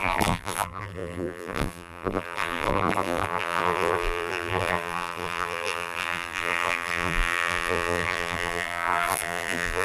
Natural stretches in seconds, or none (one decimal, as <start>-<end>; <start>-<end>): none